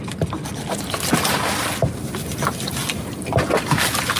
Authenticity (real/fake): real